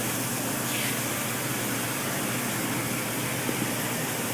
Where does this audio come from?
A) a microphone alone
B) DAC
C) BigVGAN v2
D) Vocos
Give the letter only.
C